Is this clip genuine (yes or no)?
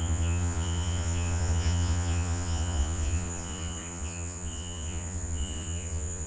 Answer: no